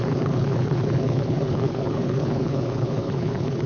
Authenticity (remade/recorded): remade